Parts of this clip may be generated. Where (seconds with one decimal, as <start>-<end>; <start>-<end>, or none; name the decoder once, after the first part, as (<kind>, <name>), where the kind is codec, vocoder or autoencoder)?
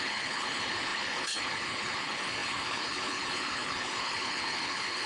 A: 0.0-5.1 (codec, HILCodec)